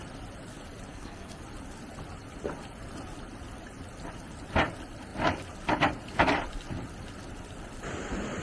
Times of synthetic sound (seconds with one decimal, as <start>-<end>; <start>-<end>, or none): 0.9-1.4